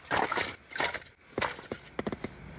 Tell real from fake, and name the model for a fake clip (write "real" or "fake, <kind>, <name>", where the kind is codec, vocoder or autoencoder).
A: real